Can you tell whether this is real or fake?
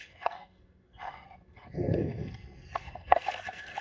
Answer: fake